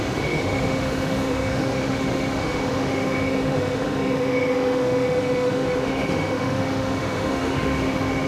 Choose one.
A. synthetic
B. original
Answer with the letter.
A